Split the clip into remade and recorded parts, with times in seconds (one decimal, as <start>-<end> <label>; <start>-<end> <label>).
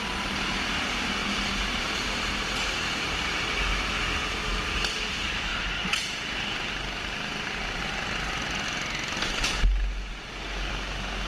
0.0-11.3 recorded